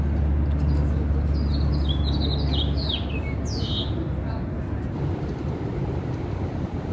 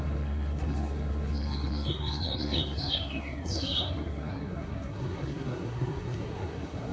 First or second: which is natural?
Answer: first